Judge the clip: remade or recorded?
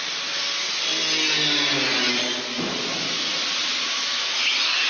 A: recorded